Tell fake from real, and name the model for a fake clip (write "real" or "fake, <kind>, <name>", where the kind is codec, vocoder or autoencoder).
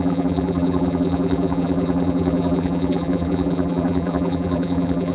fake, vocoder, BigVGAN v2